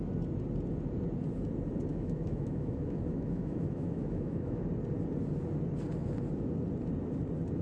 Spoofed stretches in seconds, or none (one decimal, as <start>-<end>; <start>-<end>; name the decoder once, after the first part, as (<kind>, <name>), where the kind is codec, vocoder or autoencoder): 1.9-4.6 (autoencoder, DAC-VAE)